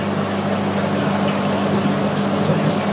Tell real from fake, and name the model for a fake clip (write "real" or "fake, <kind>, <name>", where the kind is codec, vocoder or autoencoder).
real